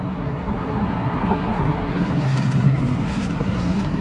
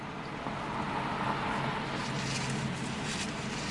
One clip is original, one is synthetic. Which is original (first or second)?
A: second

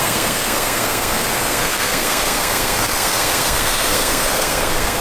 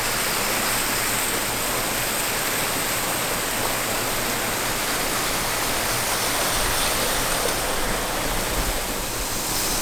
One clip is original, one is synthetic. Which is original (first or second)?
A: second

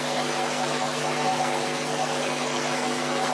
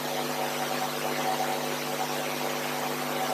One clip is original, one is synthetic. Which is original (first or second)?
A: second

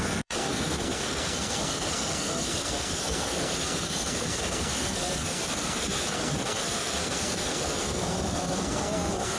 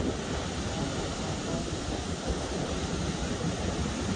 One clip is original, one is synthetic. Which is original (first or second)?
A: second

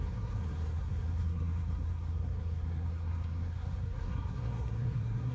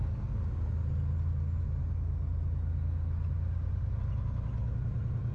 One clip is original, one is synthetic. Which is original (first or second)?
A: second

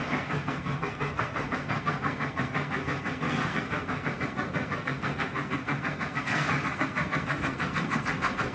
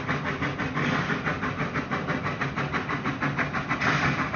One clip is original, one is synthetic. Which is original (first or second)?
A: second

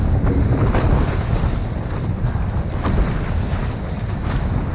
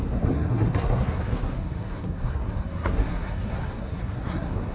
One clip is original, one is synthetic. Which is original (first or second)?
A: first